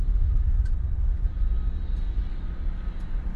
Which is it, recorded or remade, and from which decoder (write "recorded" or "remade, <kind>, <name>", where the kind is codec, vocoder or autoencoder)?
recorded